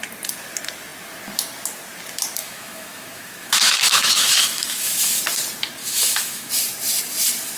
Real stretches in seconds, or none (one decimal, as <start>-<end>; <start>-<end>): 0.0-2.4; 5.2-5.8; 6.5-7.6